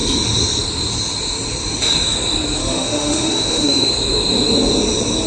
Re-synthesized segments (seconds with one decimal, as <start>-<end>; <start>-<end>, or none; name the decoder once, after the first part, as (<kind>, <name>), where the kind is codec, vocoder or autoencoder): 2.6-3.9 (autoencoder, DAC-VAE)